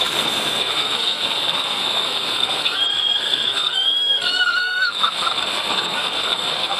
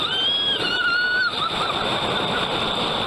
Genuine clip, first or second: second